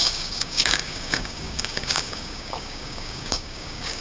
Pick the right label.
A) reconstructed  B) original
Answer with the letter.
A